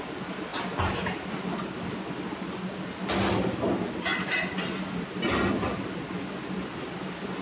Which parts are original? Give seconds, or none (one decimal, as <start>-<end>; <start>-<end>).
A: 0.0-7.4